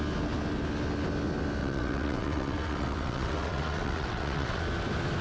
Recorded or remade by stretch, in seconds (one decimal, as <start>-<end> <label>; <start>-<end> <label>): 0.0-1.6 recorded; 1.6-4.6 remade; 4.6-5.2 recorded